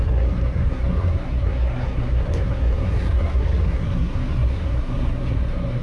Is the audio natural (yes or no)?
no